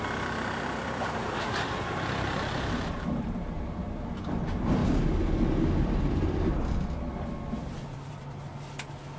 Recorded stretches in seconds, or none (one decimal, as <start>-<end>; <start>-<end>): 4.8-7.5; 8.5-9.2